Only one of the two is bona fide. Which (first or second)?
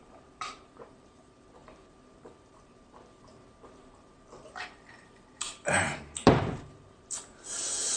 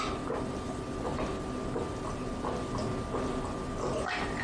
second